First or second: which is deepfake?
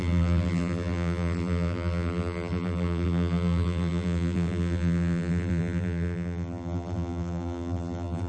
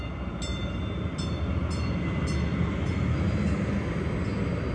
first